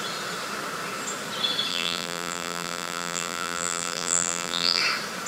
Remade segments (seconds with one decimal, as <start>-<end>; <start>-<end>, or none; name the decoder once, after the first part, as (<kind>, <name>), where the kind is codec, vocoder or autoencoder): 1.7-4.8 (vocoder, BigVGAN v2)